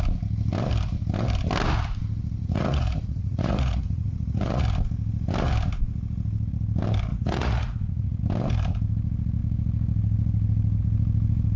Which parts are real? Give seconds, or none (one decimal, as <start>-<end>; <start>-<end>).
0.0-2.4; 4.6-7.1; 8.2-11.6